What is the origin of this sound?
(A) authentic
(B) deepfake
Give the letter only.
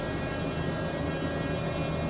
A